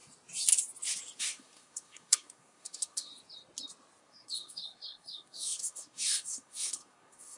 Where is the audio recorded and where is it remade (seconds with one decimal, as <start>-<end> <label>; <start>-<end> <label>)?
0.0-1.2 recorded; 1.2-3.1 remade; 3.1-4.0 recorded; 4.0-7.4 remade